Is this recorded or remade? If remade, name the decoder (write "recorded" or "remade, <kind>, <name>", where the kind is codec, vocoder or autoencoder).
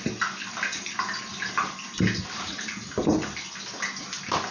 recorded